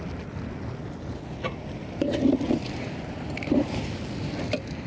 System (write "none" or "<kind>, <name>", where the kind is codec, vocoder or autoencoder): none